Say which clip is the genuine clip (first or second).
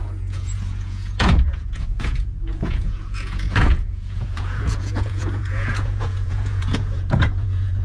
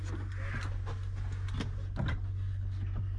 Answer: second